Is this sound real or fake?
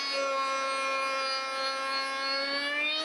real